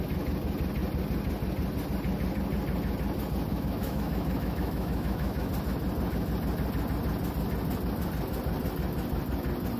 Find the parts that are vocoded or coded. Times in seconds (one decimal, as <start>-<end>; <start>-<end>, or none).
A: 3.5-5.5